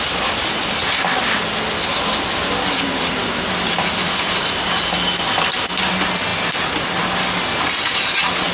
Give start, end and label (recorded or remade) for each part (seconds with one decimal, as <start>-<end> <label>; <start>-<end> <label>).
0.0-8.5 recorded